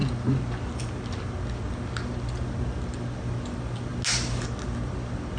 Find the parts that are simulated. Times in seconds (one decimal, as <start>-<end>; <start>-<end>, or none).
none

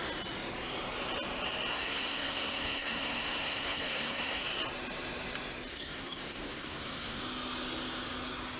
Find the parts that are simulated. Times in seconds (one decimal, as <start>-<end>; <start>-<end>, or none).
1.7-4.4; 5.7-7.2

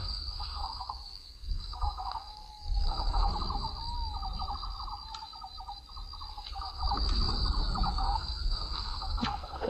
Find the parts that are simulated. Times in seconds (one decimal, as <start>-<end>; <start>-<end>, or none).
0.0-3.3; 6.3-6.8; 7.9-9.7

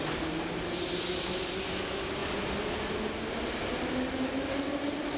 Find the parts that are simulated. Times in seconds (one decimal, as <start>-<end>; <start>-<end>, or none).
none

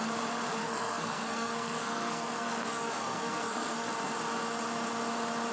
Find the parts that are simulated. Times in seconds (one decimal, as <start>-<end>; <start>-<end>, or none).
0.6-3.9

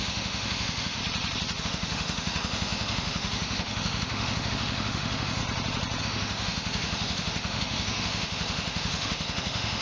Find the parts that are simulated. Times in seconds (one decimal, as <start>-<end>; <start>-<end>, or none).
0.0-1.0; 1.6-5.4; 6.0-9.8

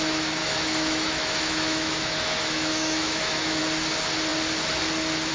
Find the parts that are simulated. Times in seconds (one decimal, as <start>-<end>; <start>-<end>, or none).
0.4-3.6

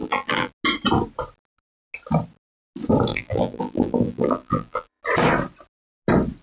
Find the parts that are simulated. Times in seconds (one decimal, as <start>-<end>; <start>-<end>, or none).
0.0-0.5; 3.1-5.0